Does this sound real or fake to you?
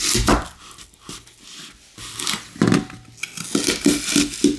real